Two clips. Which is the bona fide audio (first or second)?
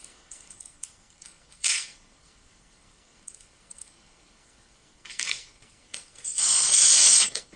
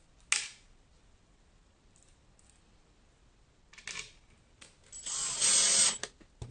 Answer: second